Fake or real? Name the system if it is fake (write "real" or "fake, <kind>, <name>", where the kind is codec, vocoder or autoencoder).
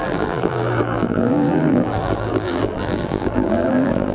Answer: fake, vocoder, BigVGAN v2